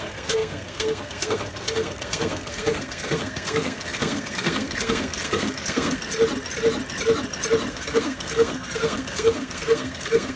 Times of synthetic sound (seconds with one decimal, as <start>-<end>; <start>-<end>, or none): 0.0-6.0; 7.7-10.4